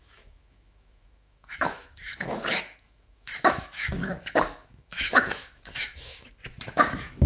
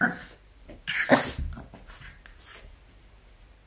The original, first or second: second